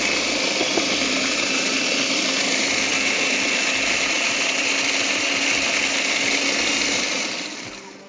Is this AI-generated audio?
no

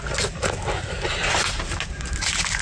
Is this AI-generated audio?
no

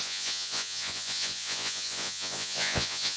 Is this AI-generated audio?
yes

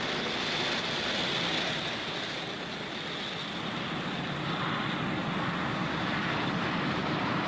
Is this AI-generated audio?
no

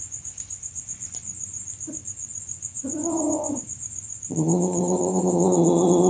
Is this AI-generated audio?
yes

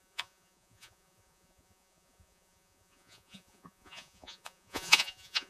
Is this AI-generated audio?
yes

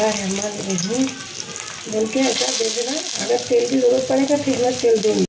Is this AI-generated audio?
no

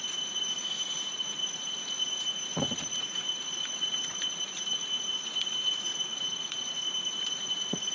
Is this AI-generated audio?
yes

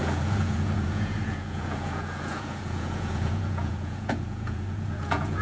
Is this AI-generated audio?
yes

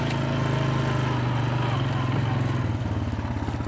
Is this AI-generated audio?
no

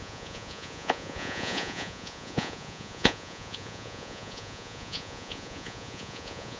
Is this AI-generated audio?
yes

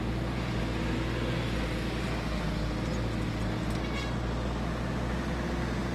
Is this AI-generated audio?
no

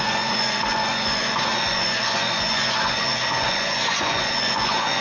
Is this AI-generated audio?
yes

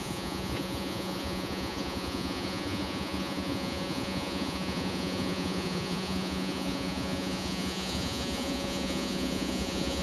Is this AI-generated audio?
yes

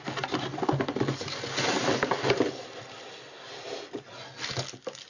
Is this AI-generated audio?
no